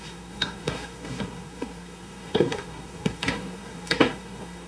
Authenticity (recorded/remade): remade